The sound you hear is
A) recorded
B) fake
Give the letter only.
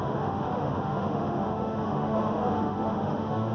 B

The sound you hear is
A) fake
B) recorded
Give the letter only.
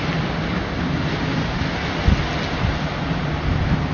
B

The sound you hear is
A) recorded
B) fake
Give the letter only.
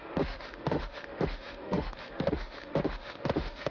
B